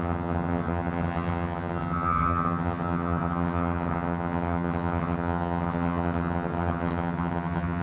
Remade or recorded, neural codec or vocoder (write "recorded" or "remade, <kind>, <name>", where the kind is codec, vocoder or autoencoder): remade, vocoder, HiFi-GAN